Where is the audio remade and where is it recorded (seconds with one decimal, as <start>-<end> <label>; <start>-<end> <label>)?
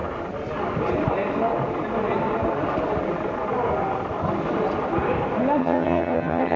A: 0.0-5.6 recorded; 5.6-6.6 remade